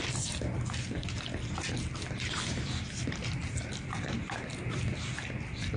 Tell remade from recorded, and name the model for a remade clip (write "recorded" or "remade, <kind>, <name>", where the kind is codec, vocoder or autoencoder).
recorded